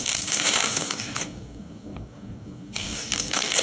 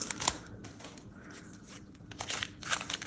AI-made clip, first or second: first